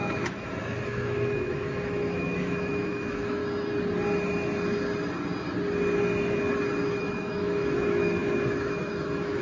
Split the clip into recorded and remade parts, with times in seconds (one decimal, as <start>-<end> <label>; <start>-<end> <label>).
0.0-3.4 remade; 3.4-7.0 recorded; 7.0-9.4 remade